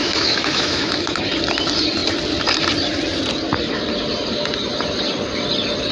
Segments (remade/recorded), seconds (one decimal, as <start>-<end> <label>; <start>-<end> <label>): 0.0-1.2 remade; 1.2-5.9 recorded